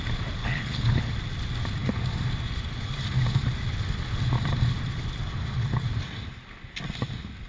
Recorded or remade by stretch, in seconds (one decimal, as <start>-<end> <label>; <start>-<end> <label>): 0.0-0.4 recorded; 0.4-1.1 remade; 1.1-7.5 recorded